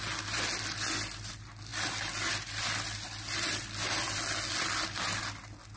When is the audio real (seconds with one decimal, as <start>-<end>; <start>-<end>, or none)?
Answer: 0.0-5.8